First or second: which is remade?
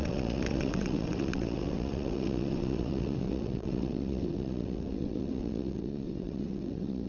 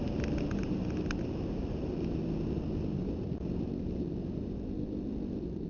first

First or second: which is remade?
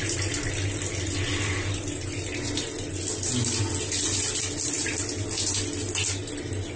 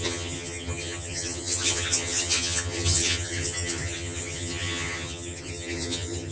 second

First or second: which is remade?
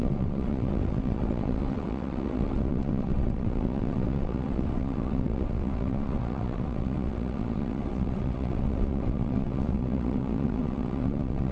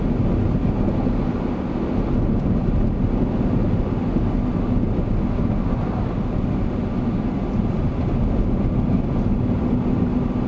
first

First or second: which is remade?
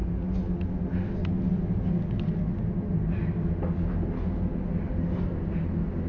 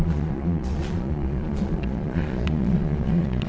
second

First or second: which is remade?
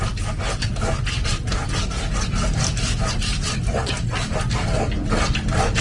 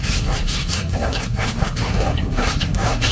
second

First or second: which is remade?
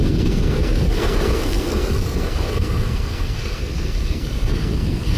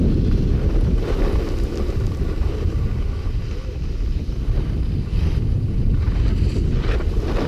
first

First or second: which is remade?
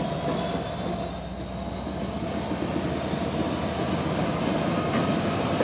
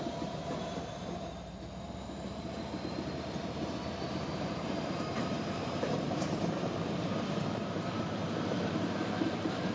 second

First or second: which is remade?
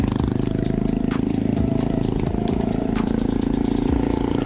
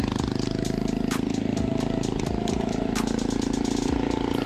first